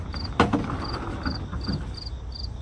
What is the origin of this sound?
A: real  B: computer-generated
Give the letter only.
A